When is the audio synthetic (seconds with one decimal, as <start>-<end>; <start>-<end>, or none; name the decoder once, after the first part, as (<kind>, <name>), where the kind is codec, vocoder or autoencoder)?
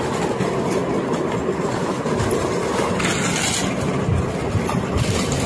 none